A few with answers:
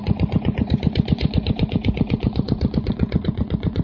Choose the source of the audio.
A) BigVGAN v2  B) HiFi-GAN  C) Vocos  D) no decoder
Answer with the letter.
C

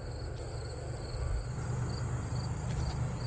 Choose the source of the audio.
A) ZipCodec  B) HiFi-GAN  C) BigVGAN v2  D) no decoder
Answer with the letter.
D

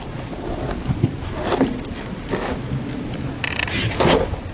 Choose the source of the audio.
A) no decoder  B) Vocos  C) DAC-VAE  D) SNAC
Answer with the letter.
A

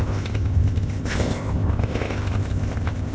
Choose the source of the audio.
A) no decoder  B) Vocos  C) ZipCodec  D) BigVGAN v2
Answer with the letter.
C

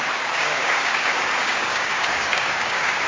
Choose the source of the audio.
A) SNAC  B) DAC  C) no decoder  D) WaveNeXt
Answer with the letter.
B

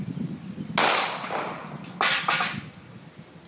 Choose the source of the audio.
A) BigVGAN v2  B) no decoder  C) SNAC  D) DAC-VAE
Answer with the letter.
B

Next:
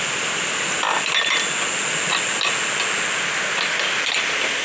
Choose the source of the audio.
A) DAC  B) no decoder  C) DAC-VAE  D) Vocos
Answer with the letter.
B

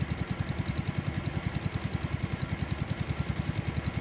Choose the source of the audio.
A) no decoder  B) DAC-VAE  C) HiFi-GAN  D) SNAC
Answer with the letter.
A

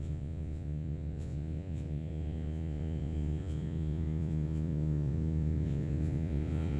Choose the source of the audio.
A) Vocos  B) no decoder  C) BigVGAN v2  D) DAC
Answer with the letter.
A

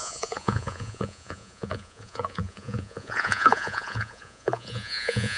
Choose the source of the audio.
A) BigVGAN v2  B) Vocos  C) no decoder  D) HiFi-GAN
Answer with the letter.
B